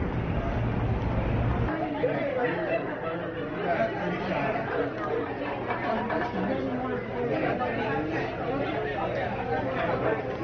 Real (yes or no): yes